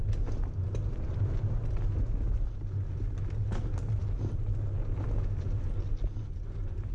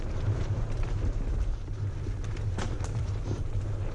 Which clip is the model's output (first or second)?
second